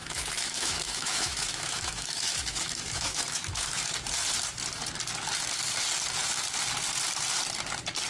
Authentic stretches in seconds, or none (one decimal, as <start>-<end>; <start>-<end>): 3.9-8.1